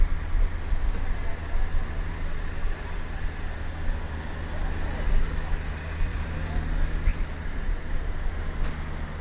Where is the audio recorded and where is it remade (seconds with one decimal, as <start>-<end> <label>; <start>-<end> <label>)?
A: 0.0-6.1 recorded; 6.1-6.6 remade; 6.6-7.1 recorded; 7.1-8.4 remade; 8.4-9.2 recorded